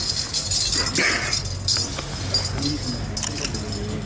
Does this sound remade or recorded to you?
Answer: recorded